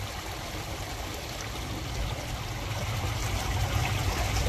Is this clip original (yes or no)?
yes